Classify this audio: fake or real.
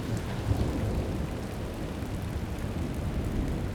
real